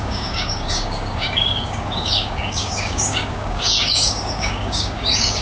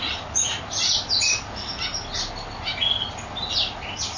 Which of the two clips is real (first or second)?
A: second